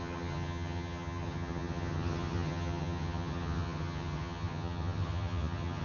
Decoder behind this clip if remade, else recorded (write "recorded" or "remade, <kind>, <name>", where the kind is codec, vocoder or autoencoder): remade, vocoder, HiFi-GAN